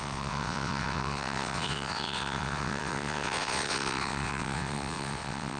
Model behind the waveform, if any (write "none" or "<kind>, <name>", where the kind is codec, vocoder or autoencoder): vocoder, WaveNeXt